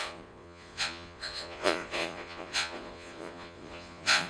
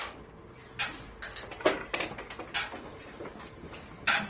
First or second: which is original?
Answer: second